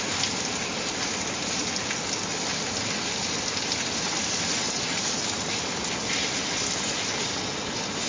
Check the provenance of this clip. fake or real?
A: real